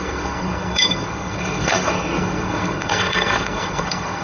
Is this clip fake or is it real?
fake